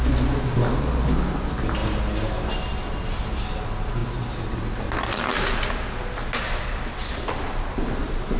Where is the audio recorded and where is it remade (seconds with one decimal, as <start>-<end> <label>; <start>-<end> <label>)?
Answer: 0.0-8.4 recorded